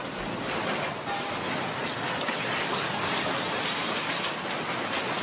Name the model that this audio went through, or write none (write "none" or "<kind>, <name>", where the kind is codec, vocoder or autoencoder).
none